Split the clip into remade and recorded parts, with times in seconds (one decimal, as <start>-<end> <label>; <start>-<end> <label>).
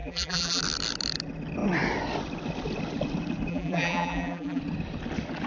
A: 0.0-0.6 remade; 0.6-3.5 recorded; 3.5-4.6 remade; 4.6-5.5 recorded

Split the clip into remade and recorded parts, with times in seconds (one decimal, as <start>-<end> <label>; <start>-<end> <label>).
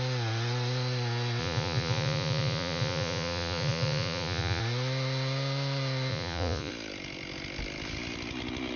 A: 0.0-1.4 recorded; 1.4-4.6 remade; 4.6-6.1 recorded; 6.1-6.7 remade; 6.7-8.8 recorded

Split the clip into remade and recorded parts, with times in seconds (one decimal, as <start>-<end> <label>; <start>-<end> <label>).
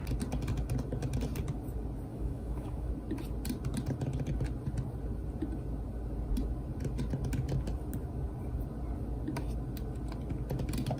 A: 0.0-2.1 recorded; 2.1-2.9 remade; 2.9-11.0 recorded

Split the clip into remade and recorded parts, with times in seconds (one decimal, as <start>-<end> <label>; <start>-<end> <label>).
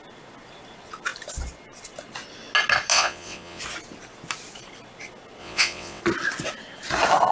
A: 0.0-2.9 recorded; 2.9-3.6 remade; 3.6-5.4 recorded; 5.4-6.0 remade; 6.0-7.3 recorded